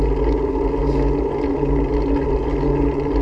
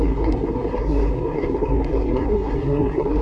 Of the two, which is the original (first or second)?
first